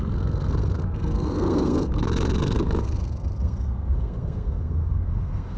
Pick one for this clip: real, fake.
fake